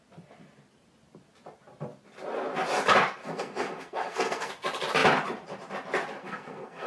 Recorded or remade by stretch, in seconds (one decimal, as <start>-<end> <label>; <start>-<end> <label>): 0.0-3.2 recorded; 3.2-4.5 remade; 4.5-6.2 recorded; 6.2-6.9 remade